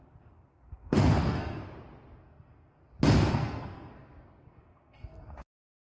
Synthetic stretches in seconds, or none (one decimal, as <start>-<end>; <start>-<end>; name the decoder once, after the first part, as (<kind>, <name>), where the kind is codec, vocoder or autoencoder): 0.0-1.6 (codec, SNAC); 2.2-2.8; 3.3-5.9